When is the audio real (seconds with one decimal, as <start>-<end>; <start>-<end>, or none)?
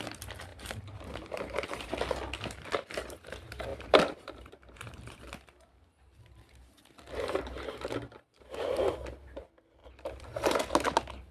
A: 0.0-0.5; 1.9-3.7; 5.2-9.8; 10.7-11.3